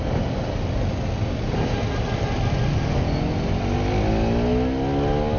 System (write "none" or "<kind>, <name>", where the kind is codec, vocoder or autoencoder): none